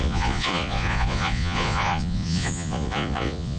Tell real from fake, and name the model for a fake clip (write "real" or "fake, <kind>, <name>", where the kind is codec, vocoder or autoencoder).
fake, vocoder, Vocos